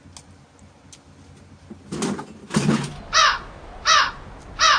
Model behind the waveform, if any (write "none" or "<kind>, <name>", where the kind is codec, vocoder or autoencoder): none